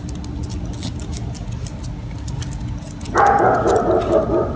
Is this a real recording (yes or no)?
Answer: yes